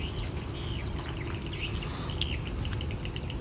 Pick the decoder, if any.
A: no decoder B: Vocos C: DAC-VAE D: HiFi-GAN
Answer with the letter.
A